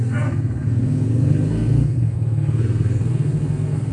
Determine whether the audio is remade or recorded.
remade